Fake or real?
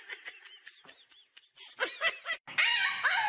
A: real